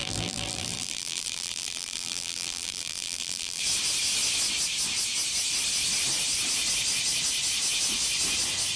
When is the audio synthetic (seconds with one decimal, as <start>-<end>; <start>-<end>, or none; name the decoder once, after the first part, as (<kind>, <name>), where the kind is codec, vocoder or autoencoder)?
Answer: 0.0-3.6 (vocoder, BigVGAN v2)